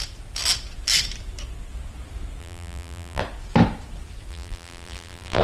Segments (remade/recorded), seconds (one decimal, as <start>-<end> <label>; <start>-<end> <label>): 0.0-2.4 recorded; 2.4-3.2 remade; 3.2-4.3 recorded; 4.3-5.4 remade